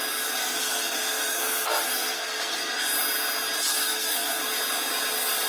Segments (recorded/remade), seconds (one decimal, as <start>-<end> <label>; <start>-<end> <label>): 0.0-0.4 recorded; 0.4-2.9 remade; 2.9-3.7 recorded; 3.7-4.4 remade; 4.4-5.5 recorded